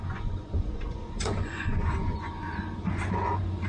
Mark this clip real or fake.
fake